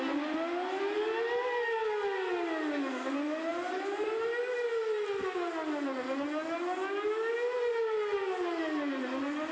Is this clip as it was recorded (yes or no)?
yes